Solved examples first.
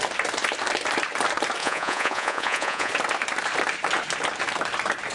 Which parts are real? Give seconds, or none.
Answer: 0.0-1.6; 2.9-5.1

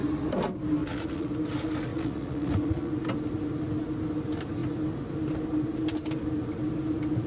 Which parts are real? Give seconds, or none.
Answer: 0.0-0.8; 1.3-1.9; 2.9-7.3